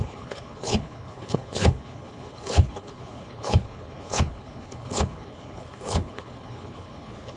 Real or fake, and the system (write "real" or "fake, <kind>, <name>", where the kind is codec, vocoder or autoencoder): fake, codec, HILCodec